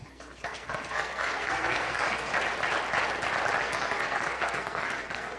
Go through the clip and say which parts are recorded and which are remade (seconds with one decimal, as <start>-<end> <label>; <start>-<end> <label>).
0.0-2.3 remade; 2.3-3.6 recorded; 3.6-5.4 remade